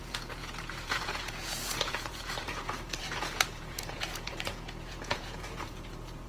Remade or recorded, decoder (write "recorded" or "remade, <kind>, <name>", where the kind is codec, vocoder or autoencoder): remade, vocoder, Vocos